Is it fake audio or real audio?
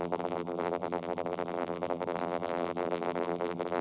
fake